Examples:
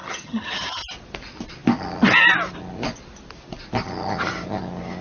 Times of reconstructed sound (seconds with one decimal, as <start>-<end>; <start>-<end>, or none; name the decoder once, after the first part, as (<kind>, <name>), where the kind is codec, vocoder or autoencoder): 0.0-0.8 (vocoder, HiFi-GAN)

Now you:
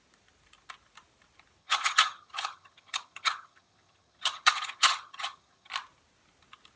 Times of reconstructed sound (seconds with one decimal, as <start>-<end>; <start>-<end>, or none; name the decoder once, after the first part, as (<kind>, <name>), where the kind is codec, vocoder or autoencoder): 1.6-5.7 (vocoder, HiFi-GAN)

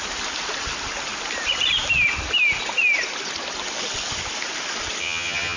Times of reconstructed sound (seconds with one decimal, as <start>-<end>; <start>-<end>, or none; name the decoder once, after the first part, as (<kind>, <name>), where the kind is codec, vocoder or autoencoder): 5.0-5.6 (vocoder, HiFi-GAN)